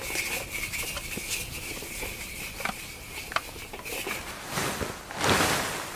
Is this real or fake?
real